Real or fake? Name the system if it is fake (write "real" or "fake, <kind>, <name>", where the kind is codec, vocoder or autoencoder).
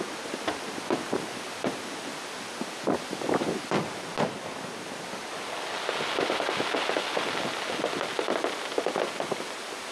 real